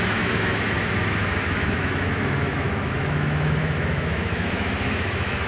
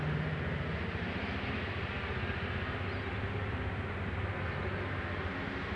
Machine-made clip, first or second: first